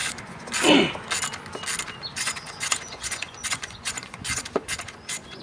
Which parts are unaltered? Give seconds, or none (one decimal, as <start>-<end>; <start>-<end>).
0.5-2.1